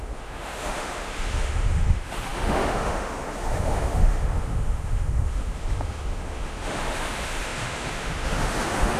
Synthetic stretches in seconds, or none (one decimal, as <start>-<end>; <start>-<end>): 0.0-9.0